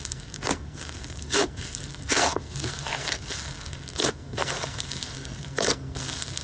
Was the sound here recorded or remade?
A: remade